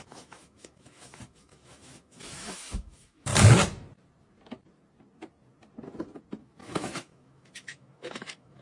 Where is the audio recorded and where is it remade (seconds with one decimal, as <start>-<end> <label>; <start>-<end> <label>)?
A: 0.0-3.3 remade; 3.3-6.4 recorded; 6.4-8.6 remade